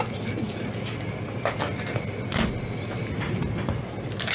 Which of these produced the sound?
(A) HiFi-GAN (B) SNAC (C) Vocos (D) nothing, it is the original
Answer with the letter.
D